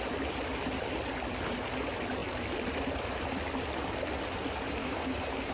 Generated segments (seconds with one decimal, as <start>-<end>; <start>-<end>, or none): 4.8-5.5